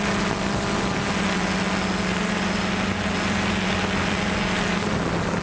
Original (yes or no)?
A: yes